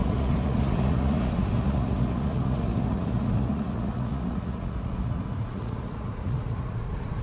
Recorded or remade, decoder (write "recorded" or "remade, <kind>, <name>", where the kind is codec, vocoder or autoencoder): remade, vocoder, Vocos